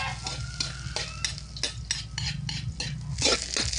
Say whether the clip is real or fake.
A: real